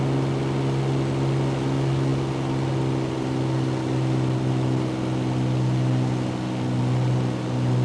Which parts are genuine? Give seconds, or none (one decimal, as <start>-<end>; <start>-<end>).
0.0-7.8